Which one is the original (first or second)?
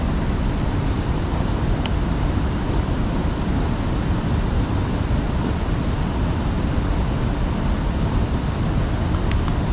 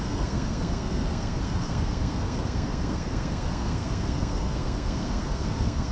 first